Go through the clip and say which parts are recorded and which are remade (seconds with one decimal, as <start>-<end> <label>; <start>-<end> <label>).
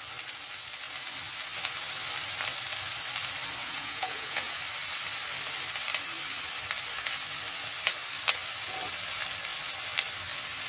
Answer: 0.0-3.6 recorded; 3.6-4.6 remade; 4.6-10.7 recorded